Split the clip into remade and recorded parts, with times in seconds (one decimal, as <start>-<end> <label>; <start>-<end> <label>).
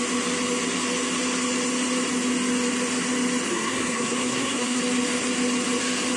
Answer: 0.0-3.5 recorded; 3.5-4.8 remade; 4.8-6.2 recorded